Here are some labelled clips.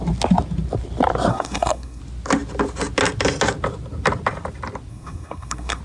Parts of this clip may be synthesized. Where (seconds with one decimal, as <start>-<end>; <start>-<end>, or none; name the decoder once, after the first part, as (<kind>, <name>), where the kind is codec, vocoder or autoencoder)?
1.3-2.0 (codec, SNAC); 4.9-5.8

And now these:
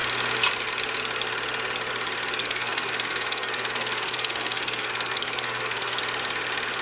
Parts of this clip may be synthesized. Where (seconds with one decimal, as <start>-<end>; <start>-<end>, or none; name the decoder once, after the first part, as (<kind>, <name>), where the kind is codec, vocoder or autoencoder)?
2.4-6.0 (codec, SNAC)

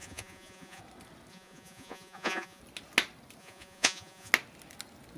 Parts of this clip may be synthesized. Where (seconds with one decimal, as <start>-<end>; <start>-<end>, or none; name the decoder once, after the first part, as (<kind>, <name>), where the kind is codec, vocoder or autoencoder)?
0.0-0.8 (vocoder, Vocos); 1.3-2.6; 3.4-4.3

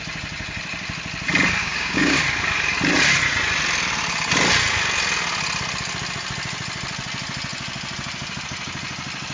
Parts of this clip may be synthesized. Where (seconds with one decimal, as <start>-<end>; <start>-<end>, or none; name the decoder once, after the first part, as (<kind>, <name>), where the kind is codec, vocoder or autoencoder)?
1.6-2.2 (codec, DAC)